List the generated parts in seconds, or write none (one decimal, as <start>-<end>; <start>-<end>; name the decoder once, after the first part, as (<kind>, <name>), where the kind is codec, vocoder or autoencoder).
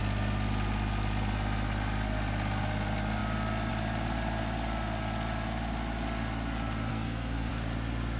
6.9-7.5 (codec, SNAC)